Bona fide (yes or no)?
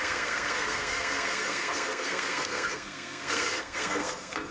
no